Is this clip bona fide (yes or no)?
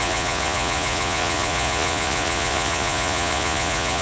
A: no